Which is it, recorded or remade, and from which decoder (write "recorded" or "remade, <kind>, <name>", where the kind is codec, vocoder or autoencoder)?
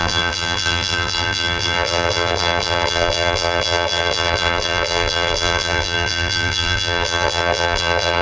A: remade, vocoder, BigVGAN v2